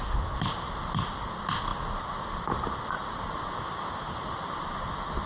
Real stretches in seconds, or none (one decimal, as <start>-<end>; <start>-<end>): 0.0-5.3